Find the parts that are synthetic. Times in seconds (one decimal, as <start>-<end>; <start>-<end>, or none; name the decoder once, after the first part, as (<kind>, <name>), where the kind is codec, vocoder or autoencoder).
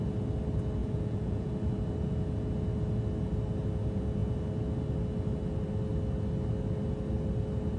0.8-1.5 (vocoder, Vocos)